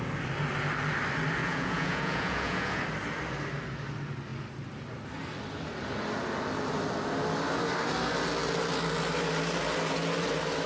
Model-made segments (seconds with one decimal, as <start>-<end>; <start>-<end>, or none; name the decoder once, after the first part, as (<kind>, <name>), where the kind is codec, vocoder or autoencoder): 1.4-2.8 (vocoder, Vocos)